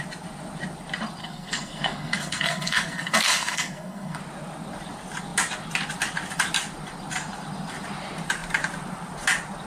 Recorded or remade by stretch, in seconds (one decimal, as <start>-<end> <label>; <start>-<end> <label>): 0.0-1.2 recorded; 1.2-4.2 remade; 4.2-9.7 recorded